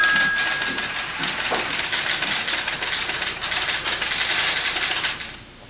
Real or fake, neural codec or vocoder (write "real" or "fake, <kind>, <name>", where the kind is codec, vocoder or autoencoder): real